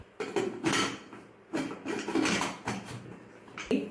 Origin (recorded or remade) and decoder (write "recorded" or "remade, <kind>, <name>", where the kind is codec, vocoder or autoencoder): recorded